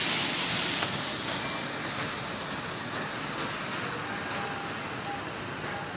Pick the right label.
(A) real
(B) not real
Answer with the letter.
A